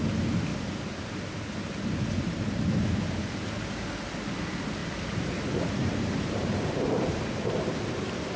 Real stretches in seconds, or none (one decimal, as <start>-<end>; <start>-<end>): 0.0-0.5; 3.9-4.8; 7.9-8.4